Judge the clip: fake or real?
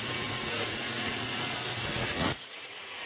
fake